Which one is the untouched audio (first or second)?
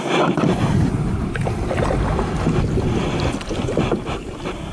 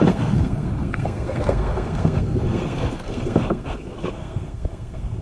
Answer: first